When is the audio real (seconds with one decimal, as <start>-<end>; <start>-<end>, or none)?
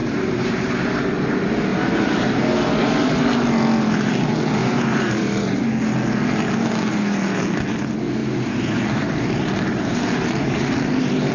0.7-1.7; 2.4-4.6; 5.7-8.2